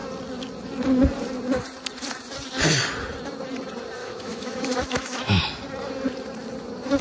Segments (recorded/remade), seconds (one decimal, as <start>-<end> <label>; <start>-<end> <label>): 0.0-4.0 recorded; 4.0-5.4 remade; 5.4-7.0 recorded